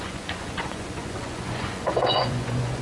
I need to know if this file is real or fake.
fake